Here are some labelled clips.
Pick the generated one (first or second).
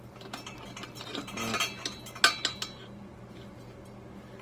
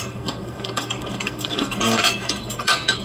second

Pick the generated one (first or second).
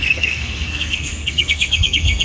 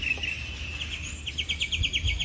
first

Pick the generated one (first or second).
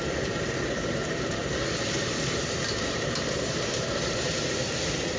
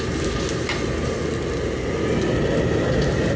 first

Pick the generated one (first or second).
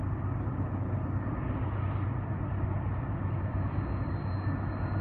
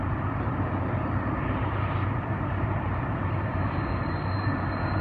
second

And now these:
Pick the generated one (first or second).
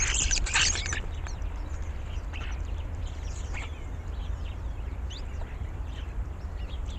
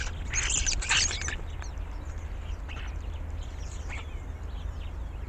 first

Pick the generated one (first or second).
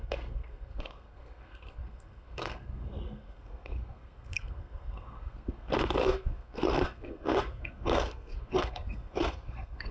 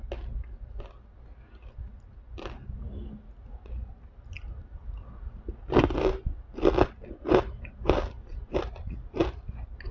first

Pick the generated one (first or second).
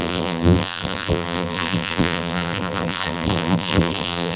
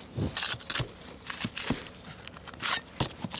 first